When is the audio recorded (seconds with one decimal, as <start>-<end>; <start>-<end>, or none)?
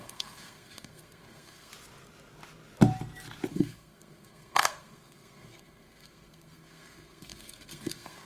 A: 1.7-3.5